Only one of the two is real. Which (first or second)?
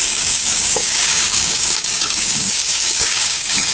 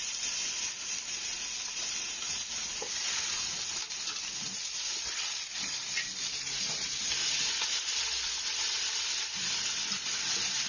second